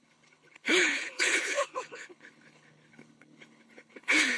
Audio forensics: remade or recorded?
remade